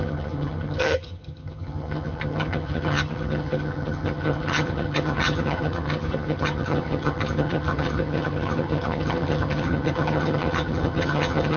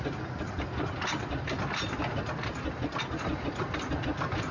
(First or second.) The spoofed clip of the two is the first